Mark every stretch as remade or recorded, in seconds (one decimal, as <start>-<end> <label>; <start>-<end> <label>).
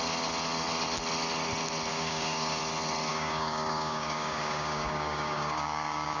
0.0-1.9 recorded; 1.9-2.6 remade; 2.6-3.1 recorded; 3.1-6.2 remade